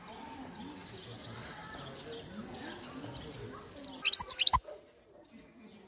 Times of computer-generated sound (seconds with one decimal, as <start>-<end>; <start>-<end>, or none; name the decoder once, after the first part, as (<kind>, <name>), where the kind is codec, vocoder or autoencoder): none